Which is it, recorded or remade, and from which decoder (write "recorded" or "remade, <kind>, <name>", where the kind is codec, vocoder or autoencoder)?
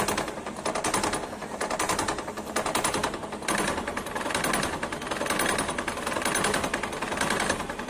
recorded